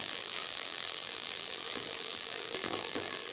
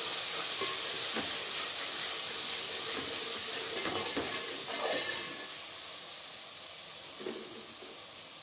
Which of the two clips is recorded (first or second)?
second